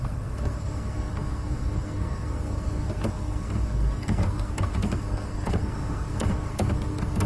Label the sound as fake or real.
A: fake